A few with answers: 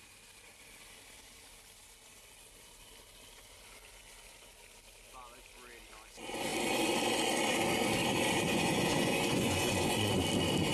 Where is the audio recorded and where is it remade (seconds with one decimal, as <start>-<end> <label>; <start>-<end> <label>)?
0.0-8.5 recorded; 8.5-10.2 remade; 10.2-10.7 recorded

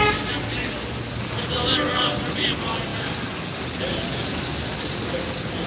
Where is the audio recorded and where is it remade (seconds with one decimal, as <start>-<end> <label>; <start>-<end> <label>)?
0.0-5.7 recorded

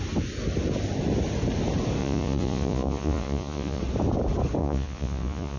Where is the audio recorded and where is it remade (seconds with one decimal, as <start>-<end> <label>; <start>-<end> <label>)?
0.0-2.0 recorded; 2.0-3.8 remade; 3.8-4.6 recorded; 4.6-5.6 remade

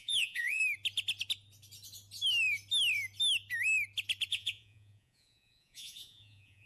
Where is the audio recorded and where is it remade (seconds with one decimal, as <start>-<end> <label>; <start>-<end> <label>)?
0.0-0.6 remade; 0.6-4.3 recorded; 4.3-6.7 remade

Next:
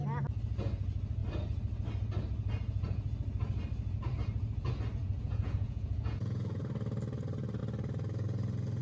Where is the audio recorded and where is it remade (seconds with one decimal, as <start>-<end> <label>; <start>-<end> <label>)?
0.0-5.0 recorded; 5.0-6.6 remade; 6.6-8.8 recorded